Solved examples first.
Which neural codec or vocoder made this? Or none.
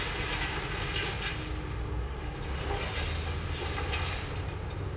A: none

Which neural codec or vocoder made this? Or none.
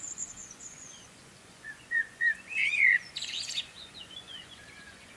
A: vocoder, Vocos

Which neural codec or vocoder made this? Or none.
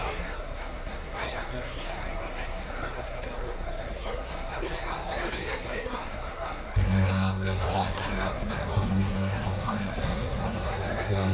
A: codec, SNAC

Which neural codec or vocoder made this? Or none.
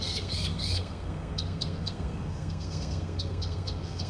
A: codec, SNAC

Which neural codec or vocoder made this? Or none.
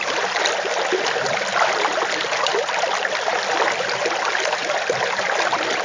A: none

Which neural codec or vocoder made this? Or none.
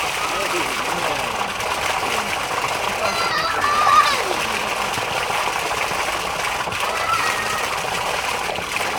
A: none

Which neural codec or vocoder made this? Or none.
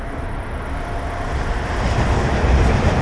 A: vocoder, BigVGAN v2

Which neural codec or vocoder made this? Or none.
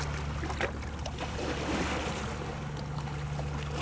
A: none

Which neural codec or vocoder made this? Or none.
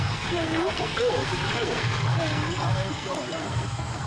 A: codec, SNAC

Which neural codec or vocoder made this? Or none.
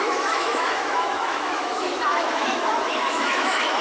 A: autoencoder, DAC-VAE